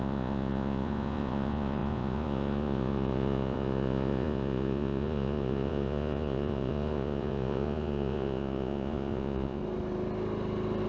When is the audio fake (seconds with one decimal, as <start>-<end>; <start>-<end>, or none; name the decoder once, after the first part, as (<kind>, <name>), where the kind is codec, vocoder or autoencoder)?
0.0-9.6 (vocoder, Vocos)